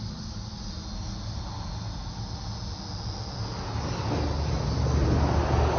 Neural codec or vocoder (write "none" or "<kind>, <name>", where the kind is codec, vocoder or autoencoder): none